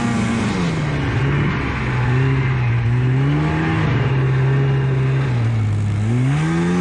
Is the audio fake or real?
real